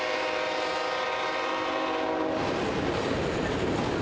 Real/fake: real